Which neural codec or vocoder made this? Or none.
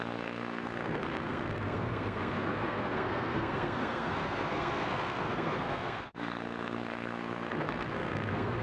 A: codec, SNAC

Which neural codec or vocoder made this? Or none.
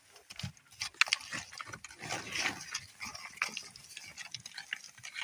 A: none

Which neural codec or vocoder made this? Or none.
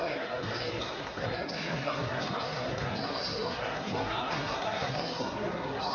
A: codec, SNAC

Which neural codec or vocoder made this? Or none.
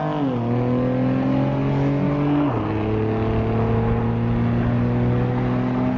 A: none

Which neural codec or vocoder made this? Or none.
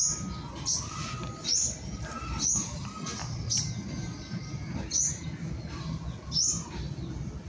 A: none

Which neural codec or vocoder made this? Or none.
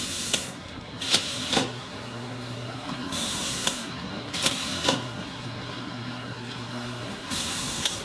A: codec, SNAC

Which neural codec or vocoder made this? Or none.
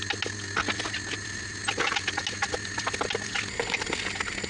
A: none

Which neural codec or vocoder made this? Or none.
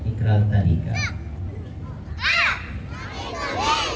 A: none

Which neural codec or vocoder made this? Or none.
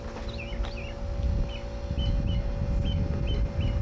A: none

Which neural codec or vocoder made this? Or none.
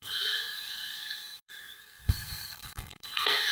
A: codec, SNAC